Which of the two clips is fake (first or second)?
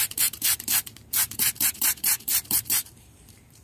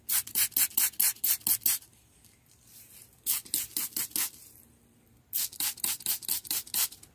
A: first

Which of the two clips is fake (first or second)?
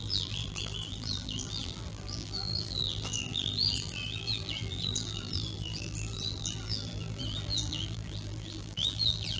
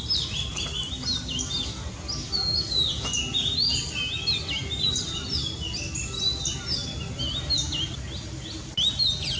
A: first